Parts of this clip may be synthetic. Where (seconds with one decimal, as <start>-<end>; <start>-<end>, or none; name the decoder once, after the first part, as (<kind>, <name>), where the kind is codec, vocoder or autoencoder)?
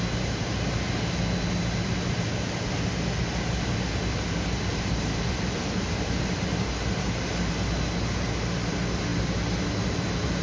4.7-6.7 (vocoder, BigVGAN v2)